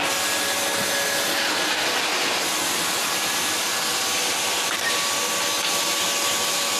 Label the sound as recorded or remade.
recorded